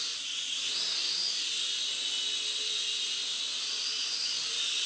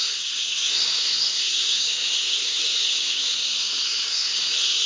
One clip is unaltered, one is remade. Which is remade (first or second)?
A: second